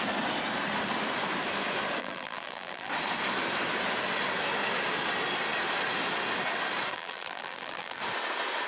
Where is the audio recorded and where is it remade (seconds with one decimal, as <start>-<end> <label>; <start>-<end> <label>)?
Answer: 0.0-2.0 recorded; 2.0-2.9 remade; 2.9-6.9 recorded; 6.9-8.0 remade; 8.0-8.7 recorded